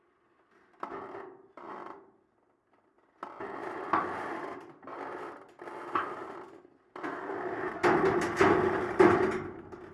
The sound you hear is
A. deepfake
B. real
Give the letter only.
B